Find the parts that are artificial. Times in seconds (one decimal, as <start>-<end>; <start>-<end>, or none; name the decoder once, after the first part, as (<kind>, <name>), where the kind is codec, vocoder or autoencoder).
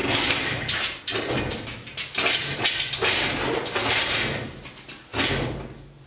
0.0-1.0 (vocoder, BigVGAN v2); 2.4-3.3; 5.1-6.1